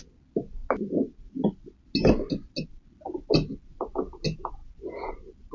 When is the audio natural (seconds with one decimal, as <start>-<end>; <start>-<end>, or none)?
0.0-5.5